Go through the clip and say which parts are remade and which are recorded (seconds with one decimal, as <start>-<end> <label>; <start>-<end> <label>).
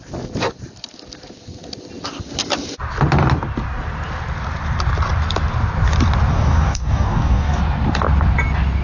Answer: 0.0-6.3 recorded; 6.3-7.6 remade; 7.6-8.8 recorded